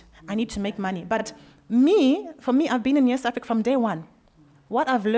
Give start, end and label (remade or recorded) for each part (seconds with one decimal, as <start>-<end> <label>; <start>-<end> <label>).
0.0-5.2 recorded